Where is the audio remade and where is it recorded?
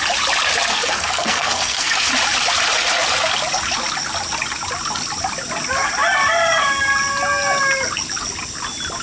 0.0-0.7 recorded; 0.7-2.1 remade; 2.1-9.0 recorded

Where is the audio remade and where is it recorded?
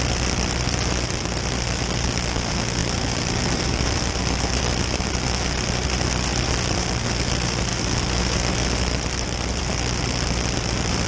0.0-2.8 recorded; 2.8-4.6 remade; 4.6-11.1 recorded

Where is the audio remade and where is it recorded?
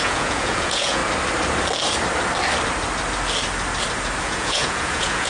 0.0-1.0 remade; 1.0-4.2 recorded; 4.2-5.3 remade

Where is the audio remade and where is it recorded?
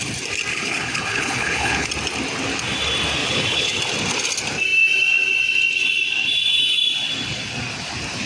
0.0-0.5 recorded; 0.5-1.9 remade; 1.9-3.2 recorded; 3.2-3.8 remade; 3.8-8.3 recorded